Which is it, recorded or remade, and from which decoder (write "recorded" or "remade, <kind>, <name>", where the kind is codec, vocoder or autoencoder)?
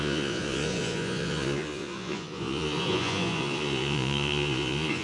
remade, vocoder, Vocos